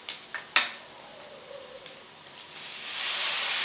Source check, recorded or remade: recorded